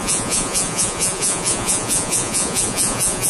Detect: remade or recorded remade